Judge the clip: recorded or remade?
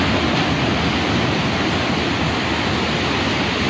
recorded